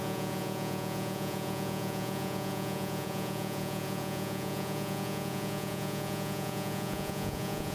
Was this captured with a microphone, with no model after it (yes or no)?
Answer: no